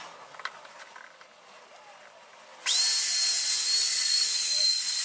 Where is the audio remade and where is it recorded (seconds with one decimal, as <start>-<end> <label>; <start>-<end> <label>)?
0.0-3.8 recorded; 3.8-5.0 remade